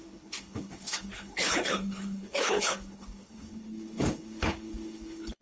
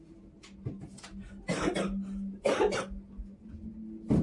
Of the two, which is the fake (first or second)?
first